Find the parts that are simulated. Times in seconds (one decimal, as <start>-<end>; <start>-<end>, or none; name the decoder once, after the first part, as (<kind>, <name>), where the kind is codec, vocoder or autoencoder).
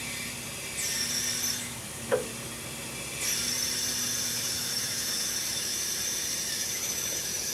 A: 1.6-2.3 (autoencoder, DAC-VAE); 4.3-5.7; 6.5-7.5